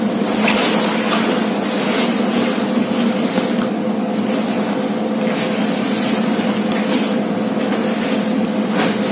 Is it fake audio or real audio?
real